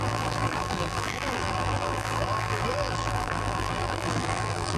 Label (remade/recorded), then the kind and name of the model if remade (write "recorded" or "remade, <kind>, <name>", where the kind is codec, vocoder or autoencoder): remade, vocoder, BigVGAN v2